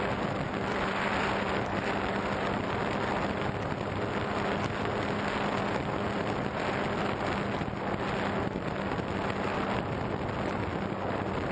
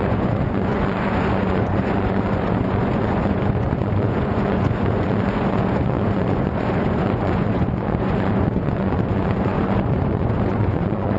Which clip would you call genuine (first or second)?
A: first